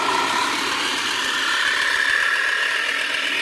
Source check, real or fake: real